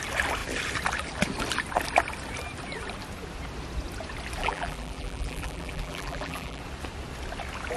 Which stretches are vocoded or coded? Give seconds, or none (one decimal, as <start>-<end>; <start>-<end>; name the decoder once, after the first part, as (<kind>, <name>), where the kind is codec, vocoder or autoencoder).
4.4-6.6 (vocoder, BigVGAN v2)

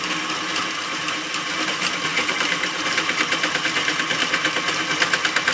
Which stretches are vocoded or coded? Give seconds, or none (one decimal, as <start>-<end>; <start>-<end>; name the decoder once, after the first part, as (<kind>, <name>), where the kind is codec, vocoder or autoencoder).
2.1-3.6 (vocoder, BigVGAN v2)

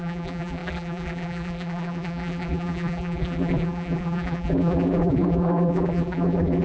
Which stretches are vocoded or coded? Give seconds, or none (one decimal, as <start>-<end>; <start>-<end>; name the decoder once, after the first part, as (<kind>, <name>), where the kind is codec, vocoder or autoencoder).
0.0-6.6 (vocoder, BigVGAN v2)

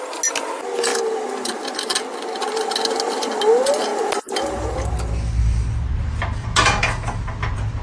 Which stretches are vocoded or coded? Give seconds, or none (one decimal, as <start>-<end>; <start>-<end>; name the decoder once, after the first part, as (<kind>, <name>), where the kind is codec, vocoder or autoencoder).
0.9-2.0 (vocoder, BigVGAN v2)

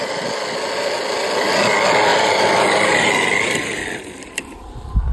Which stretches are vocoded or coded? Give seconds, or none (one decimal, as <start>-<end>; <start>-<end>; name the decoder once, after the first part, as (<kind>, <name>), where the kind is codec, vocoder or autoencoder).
2.1-5.1 (vocoder, BigVGAN v2)

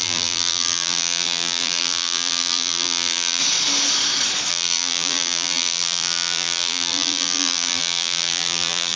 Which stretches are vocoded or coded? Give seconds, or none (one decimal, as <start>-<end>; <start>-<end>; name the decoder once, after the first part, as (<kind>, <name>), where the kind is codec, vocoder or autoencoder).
0.0-3.4 (vocoder, BigVGAN v2); 4.5-9.0

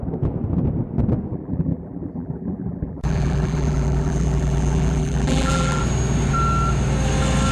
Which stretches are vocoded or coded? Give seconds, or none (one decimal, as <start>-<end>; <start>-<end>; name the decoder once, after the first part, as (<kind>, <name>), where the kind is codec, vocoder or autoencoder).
1.3-5.8 (vocoder, BigVGAN v2)